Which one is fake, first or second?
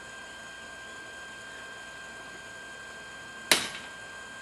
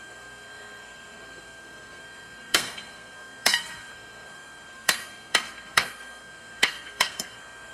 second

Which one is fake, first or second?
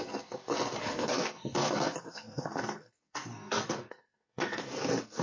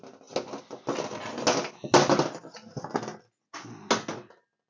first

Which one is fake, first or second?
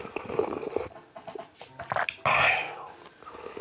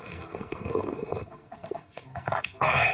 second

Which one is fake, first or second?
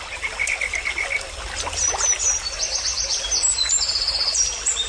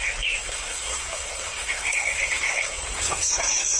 second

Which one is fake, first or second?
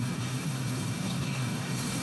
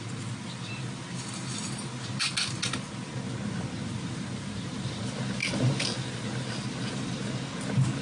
first